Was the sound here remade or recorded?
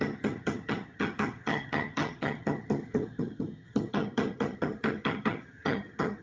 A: remade